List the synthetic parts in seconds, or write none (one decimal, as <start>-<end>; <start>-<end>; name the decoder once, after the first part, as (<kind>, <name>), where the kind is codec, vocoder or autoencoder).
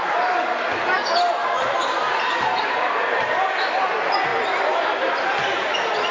1.4-3.0 (vocoder, BigVGAN v2); 4.3-5.2